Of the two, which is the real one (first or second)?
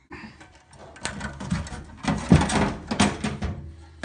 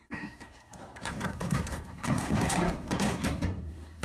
first